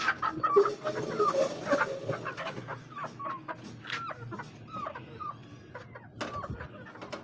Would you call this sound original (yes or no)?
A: yes